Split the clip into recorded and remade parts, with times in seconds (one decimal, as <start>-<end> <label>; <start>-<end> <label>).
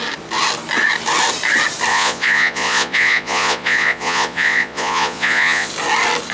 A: 0.0-1.9 recorded; 1.9-5.7 remade; 5.7-6.3 recorded